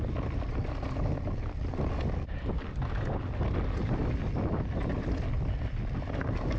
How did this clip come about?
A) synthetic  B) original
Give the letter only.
B